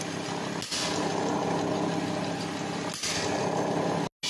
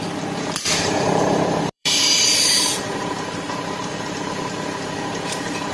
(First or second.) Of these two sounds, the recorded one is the first